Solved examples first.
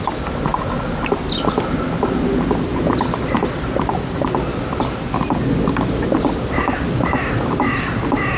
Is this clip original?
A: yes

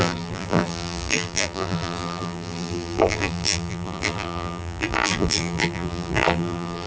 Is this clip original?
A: no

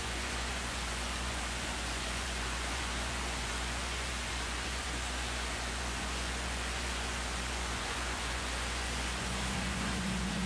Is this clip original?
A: no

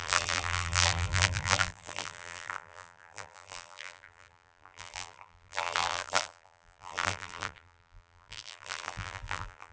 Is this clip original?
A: no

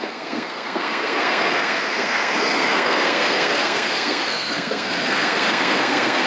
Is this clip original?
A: no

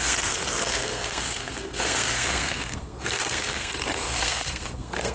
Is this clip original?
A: no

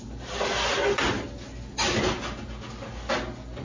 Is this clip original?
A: yes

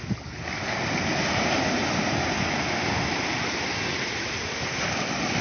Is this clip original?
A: yes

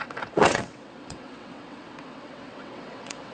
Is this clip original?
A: no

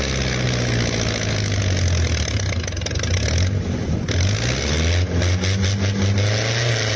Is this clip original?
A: yes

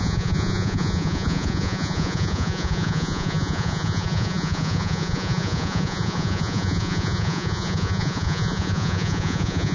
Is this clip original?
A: no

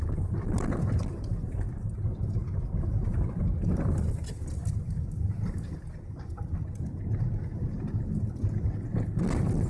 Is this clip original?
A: yes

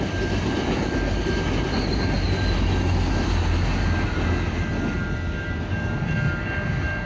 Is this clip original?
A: yes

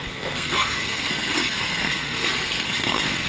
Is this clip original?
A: no